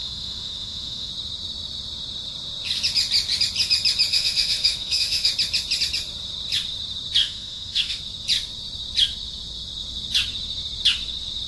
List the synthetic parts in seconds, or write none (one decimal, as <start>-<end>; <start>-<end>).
0.0-1.1; 4.1-5.3; 7.2-8.0